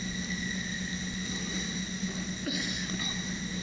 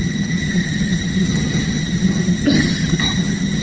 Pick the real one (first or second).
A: first